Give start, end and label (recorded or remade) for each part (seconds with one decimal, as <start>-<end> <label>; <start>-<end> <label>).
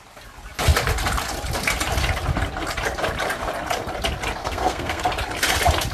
0.0-4.4 recorded; 4.4-5.0 remade; 5.0-5.9 recorded